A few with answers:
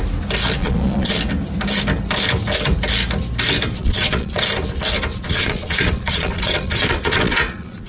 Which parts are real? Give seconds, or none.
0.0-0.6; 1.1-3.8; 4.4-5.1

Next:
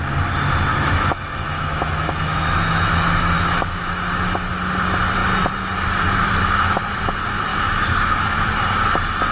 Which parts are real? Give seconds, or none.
0.0-0.7; 4.0-7.5; 8.8-9.3

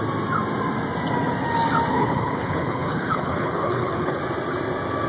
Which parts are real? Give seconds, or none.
0.0-1.9; 4.2-5.1

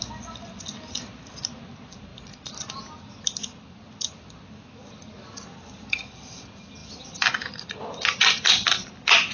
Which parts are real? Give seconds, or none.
0.0-9.3

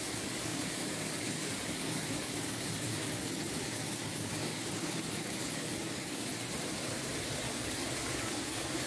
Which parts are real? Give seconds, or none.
6.3-7.5